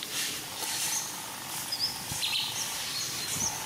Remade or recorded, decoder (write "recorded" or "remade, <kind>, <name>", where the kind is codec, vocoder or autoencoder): remade, vocoder, BigVGAN v2